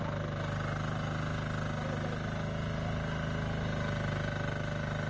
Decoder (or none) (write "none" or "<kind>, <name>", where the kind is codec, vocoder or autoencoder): none